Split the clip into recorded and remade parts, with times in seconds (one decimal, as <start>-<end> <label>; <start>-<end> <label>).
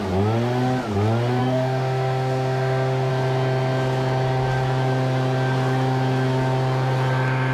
0.0-1.4 recorded; 1.4-3.1 remade; 3.1-7.5 recorded